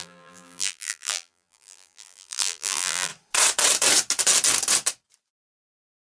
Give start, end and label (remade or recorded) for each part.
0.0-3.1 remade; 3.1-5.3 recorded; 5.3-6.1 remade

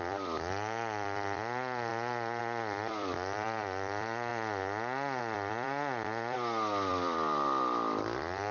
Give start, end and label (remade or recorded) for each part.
0.0-4.3 remade; 4.3-5.2 recorded; 5.2-8.5 remade

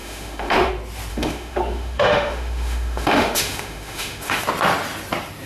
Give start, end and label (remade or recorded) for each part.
0.0-0.7 remade; 0.7-1.1 recorded; 1.1-4.4 remade; 4.4-5.5 recorded

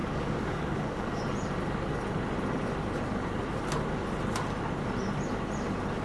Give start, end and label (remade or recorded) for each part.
0.0-1.2 remade; 1.2-6.0 recorded

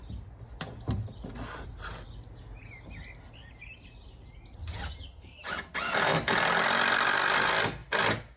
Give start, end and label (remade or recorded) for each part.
0.0-8.4 recorded

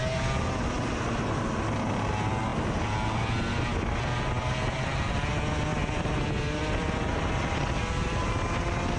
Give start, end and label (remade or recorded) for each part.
0.0-9.0 recorded

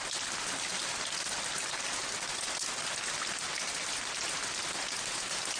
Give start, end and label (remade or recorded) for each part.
0.0-5.6 recorded